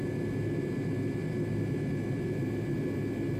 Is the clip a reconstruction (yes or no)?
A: no